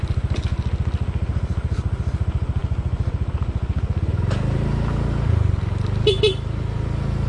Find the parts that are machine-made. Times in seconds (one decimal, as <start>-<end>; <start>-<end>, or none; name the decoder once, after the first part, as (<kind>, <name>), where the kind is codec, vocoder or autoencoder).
none